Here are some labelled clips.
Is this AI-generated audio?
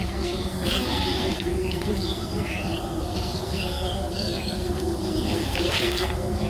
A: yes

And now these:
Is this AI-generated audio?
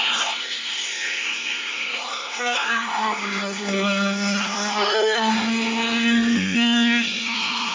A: yes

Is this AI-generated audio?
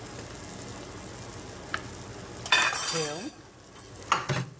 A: no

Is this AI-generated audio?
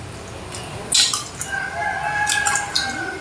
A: no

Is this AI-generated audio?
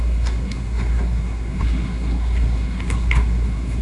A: yes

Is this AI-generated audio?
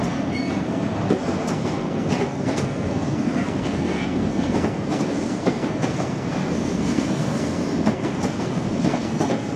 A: yes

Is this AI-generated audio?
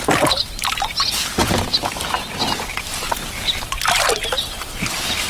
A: no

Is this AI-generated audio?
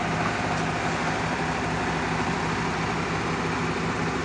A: no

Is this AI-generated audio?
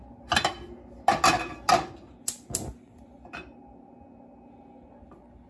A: no